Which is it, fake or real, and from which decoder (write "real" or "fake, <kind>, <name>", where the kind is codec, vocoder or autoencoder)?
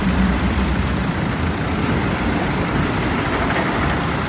fake, vocoder, BigVGAN v2